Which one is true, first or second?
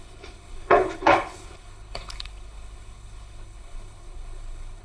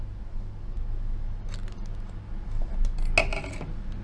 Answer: second